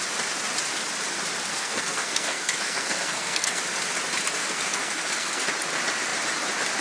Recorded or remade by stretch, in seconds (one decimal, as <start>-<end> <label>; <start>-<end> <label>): 0.0-1.5 recorded; 1.5-3.6 remade; 3.6-4.4 recorded; 4.4-5.5 remade; 5.5-6.8 recorded

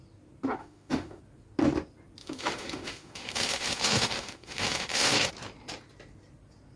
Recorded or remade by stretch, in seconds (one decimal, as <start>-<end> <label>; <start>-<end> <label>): 0.0-0.6 recorded; 0.6-1.2 remade; 1.2-2.2 recorded; 2.2-5.3 remade; 5.3-6.8 recorded

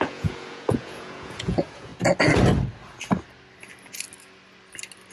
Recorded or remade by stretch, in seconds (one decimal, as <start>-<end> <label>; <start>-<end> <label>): 0.0-1.9 remade; 1.9-5.1 recorded

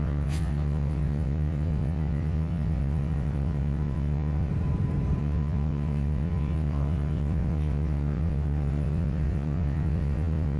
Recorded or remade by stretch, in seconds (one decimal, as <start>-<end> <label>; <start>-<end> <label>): 0.0-4.5 remade; 4.5-5.2 recorded; 5.2-10.6 remade